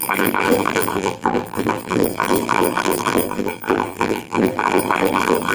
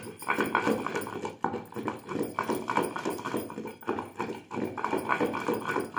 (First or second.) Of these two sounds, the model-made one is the first